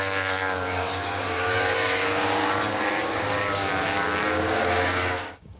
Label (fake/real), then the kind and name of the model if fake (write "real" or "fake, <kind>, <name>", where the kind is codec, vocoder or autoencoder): fake, codec, DAC